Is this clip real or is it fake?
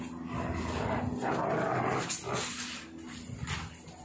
real